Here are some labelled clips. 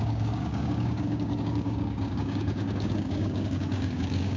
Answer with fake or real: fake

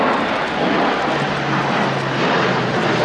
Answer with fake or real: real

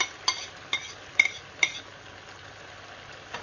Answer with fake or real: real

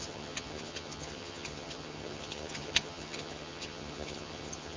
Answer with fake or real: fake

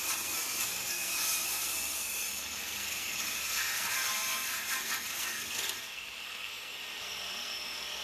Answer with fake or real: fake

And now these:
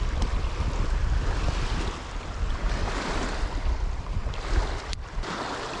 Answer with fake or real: real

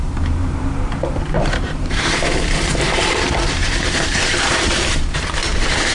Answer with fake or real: fake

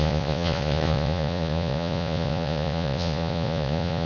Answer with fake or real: fake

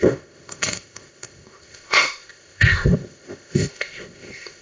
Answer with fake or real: fake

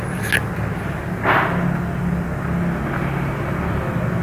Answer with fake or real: real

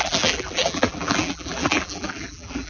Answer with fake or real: fake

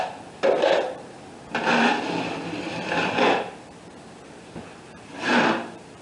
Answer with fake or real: fake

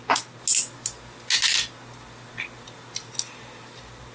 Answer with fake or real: real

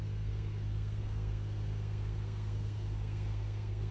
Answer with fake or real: fake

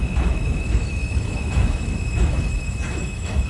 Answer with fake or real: fake